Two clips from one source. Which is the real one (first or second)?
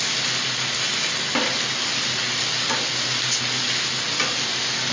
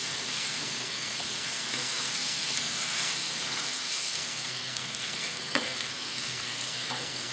first